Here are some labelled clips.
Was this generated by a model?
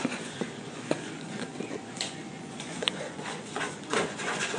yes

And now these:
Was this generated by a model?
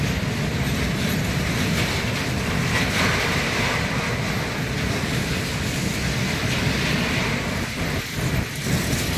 no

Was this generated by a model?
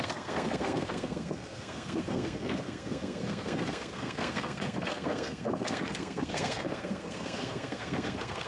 yes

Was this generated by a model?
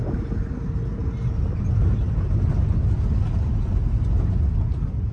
no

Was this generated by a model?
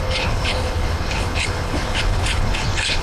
yes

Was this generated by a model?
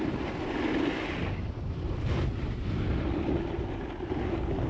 no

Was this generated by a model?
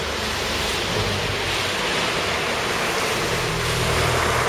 no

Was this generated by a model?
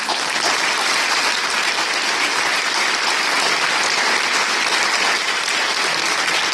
no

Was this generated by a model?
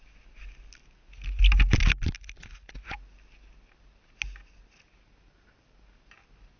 no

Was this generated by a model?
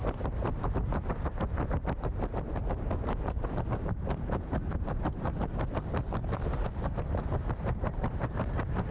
yes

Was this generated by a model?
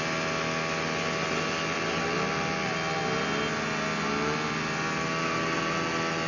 no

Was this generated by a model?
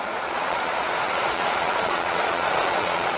yes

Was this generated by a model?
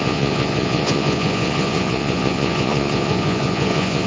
yes